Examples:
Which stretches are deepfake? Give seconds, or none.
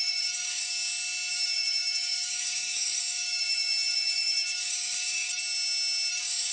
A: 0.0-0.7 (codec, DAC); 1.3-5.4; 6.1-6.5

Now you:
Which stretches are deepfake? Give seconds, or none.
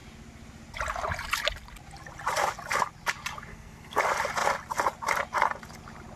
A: 3.5-4.0 (codec, SNAC)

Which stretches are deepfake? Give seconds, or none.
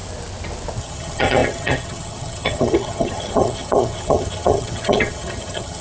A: 0.8-5.8 (vocoder, HiFi-GAN)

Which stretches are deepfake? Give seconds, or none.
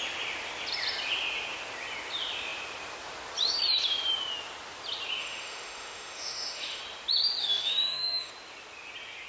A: 5.2-6.8 (autoencoder, DAC-VAE); 7.4-8.3